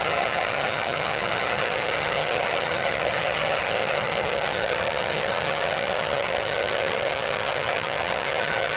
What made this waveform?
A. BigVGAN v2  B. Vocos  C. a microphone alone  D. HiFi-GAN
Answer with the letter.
D